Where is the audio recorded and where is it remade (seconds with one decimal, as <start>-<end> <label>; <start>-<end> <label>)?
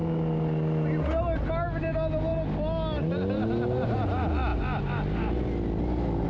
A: 0.0-6.3 recorded